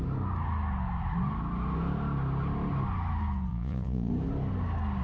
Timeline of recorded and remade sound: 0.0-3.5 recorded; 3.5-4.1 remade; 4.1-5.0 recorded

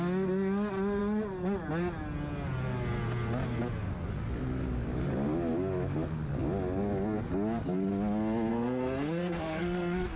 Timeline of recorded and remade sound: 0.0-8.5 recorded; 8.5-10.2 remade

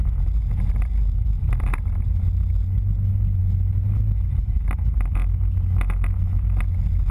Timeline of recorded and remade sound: 0.0-7.1 recorded

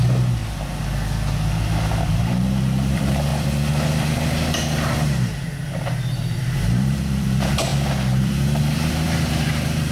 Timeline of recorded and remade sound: 0.0-0.4 remade; 0.4-2.1 recorded; 2.1-3.3 remade; 3.3-6.2 recorded; 6.2-9.9 remade

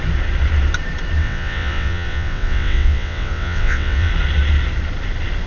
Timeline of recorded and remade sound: 0.0-1.2 recorded; 1.2-4.1 remade; 4.1-5.5 recorded